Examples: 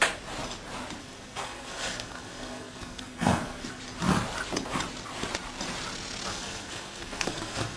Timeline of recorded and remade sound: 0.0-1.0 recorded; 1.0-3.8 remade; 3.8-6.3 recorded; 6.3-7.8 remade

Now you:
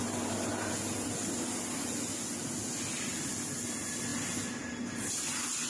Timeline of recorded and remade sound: 0.0-5.7 recorded

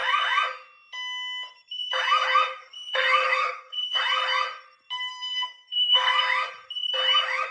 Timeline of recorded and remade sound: 0.0-2.5 recorded; 2.5-4.0 remade; 4.0-5.1 recorded; 5.1-6.2 remade; 6.2-7.5 recorded

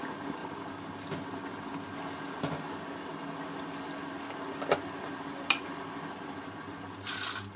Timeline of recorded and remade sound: 0.0-7.6 recorded

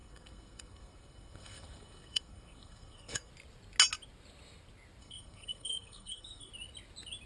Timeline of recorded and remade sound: 0.0-3.3 remade; 3.3-5.0 recorded; 5.0-6.5 remade; 6.5-7.3 recorded